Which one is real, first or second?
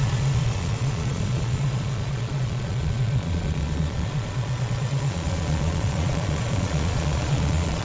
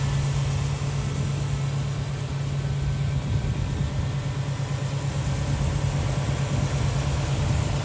second